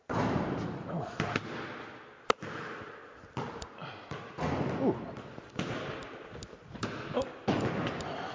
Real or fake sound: fake